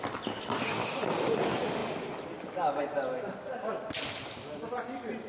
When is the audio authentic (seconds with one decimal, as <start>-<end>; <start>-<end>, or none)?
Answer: 0.0-1.8; 2.8-5.3